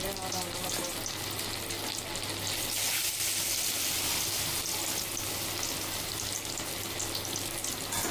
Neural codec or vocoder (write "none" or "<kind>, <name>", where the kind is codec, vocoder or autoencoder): none